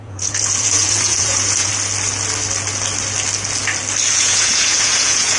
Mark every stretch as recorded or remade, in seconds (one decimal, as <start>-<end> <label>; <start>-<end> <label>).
0.0-1.7 remade; 1.7-4.1 recorded; 4.1-5.4 remade